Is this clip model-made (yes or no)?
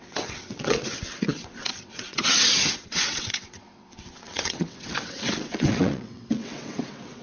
yes